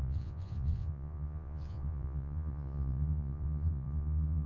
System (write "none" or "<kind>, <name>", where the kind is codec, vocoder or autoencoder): vocoder, Vocos